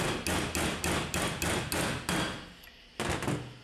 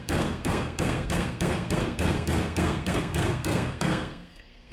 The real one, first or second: first